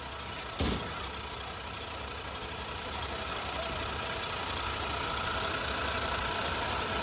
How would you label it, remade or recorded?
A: recorded